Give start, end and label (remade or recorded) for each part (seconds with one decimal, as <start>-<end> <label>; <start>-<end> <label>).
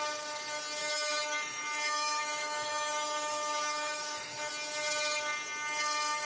0.0-0.8 recorded; 0.8-4.5 remade; 4.5-6.2 recorded